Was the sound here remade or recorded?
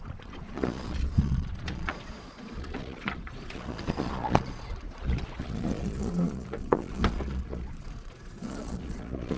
remade